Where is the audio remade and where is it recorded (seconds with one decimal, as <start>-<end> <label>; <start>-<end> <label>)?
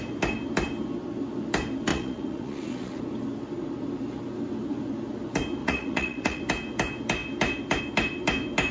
0.0-1.9 recorded; 1.9-3.0 remade; 3.0-5.6 recorded; 5.6-6.4 remade; 6.4-8.7 recorded